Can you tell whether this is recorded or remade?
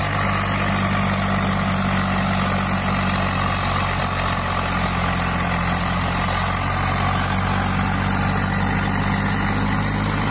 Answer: recorded